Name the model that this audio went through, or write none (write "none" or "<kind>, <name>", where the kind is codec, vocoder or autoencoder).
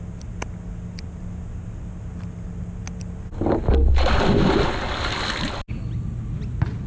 none